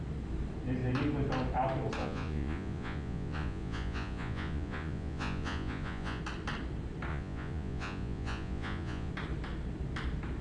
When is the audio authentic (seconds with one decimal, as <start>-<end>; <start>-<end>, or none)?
0.0-2.0; 6.2-7.1; 9.1-10.4